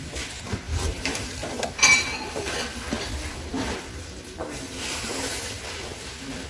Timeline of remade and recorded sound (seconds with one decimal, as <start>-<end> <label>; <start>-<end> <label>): 0.0-0.7 recorded; 0.7-1.6 remade; 1.6-6.5 recorded